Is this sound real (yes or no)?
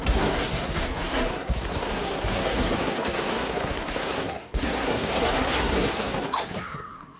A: no